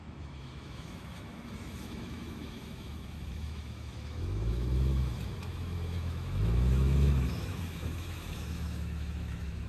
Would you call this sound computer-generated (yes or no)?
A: yes